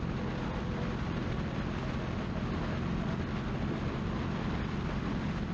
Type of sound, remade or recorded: recorded